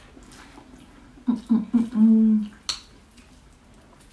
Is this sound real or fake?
real